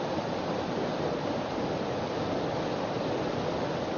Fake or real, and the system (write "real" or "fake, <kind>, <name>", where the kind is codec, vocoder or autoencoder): real